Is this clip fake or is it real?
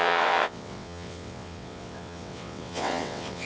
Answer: fake